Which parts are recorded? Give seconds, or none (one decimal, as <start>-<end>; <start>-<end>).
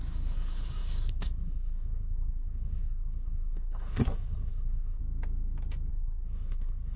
5.0-5.9